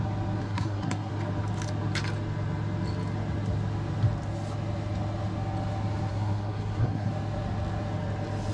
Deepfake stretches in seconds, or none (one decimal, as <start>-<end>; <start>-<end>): 0.4-1.1; 6.1-7.1